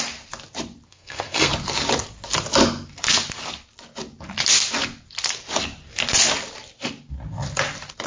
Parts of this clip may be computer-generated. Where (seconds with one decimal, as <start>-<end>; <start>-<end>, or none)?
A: 0.9-1.5